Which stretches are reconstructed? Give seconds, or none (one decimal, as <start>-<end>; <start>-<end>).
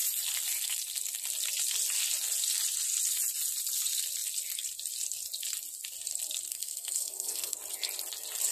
6.5-7.6